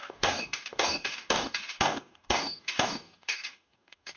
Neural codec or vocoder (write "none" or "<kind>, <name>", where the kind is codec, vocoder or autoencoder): codec, DAC